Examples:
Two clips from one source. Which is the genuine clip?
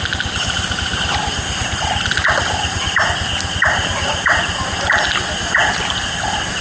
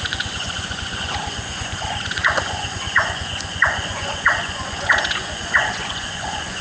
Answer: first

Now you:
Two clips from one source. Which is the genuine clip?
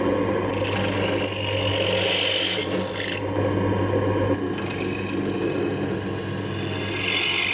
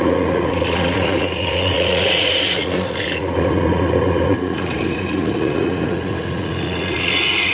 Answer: first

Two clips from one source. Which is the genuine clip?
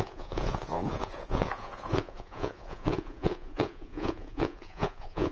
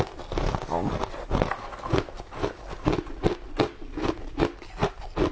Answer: second